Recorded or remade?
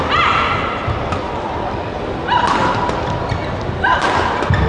recorded